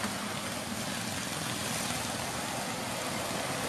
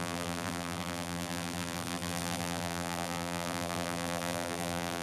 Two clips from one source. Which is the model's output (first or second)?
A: second